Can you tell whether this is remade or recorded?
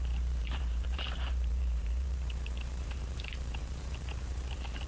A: remade